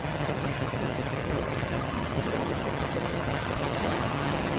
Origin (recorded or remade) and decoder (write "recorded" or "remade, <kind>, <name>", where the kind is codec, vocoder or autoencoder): remade, vocoder, HiFi-GAN